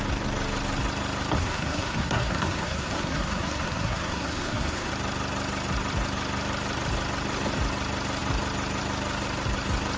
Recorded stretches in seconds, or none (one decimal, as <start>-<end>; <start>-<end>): 0.0-1.4; 4.9-10.0

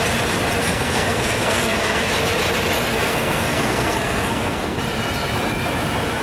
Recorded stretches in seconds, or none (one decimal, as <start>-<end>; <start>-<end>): 0.0-0.6; 2.1-2.9; 4.8-6.2